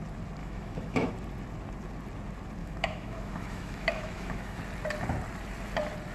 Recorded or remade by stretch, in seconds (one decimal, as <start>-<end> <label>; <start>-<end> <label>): 0.0-0.4 recorded; 0.4-1.1 remade; 1.1-2.6 recorded; 2.6-4.6 remade; 4.6-6.1 recorded